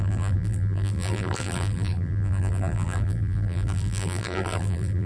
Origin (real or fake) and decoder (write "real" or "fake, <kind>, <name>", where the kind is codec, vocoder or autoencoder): fake, vocoder, BigVGAN v2